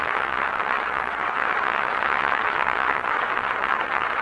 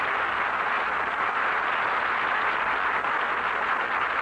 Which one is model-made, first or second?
first